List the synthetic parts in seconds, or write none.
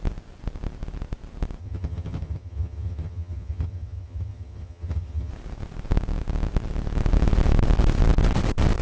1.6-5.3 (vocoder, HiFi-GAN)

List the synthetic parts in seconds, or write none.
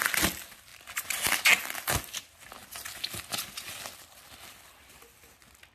none